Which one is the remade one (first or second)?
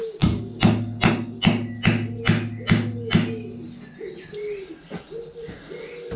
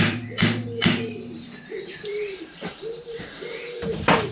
second